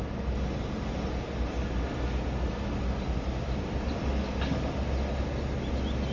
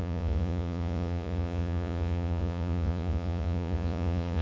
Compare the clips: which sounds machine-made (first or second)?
second